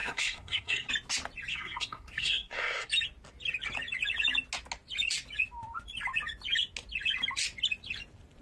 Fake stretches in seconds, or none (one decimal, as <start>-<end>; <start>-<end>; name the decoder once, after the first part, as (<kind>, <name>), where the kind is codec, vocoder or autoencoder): 0.0-0.9 (codec, SNAC); 1.5-2.9